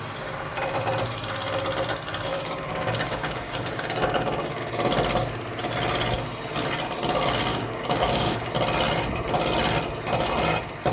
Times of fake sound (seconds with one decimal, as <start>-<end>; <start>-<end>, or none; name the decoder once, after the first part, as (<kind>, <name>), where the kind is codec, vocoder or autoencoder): 2.3-4.6 (codec, DAC); 7.5-8.5